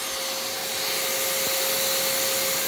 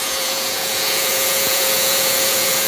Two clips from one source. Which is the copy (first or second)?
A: second